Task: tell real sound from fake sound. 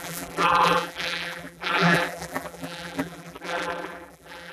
fake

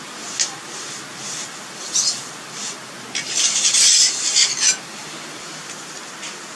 real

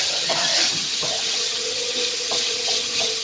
fake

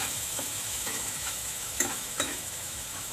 fake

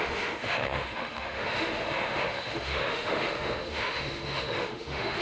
fake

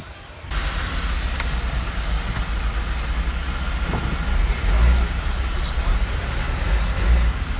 real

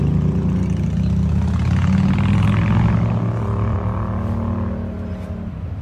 real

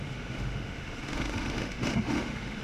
fake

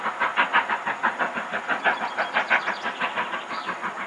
real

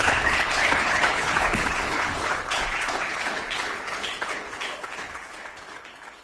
fake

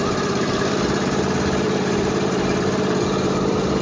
fake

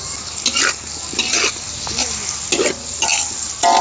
real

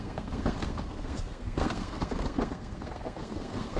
fake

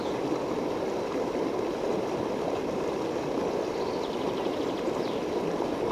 fake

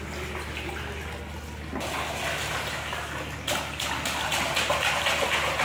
real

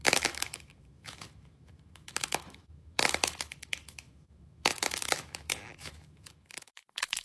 fake